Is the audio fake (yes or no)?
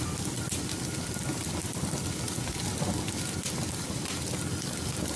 no